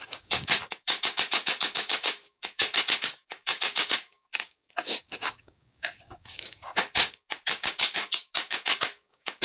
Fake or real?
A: fake